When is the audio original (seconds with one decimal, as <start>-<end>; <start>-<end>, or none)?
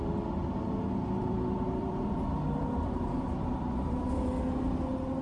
0.0-1.2; 4.3-5.2